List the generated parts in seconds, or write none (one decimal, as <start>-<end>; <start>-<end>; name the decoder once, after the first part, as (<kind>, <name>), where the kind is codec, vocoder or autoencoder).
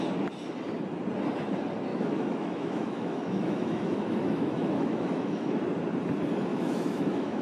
1.9-5.6 (autoencoder, DAC-VAE); 6.5-7.4